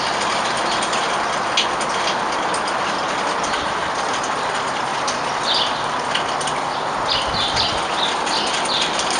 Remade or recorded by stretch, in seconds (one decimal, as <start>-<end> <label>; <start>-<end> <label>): 0.0-9.2 recorded